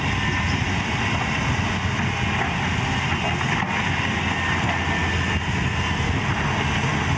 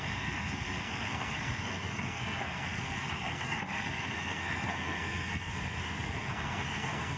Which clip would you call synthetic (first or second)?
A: second